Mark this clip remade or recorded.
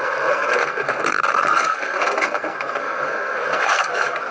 remade